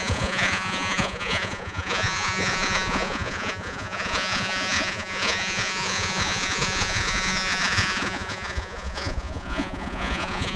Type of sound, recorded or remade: remade